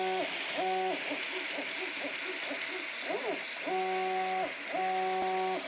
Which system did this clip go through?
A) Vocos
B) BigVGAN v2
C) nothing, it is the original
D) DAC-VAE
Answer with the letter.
C